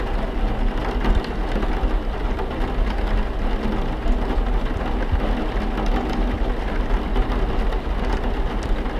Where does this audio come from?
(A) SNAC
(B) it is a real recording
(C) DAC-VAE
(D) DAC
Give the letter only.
B